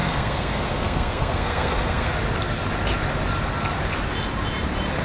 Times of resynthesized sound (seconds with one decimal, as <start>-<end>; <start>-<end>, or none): 0.0-2.1